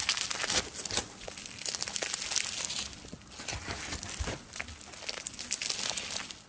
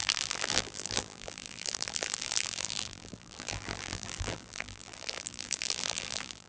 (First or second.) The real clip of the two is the first